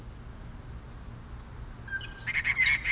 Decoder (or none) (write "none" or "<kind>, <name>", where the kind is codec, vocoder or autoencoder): none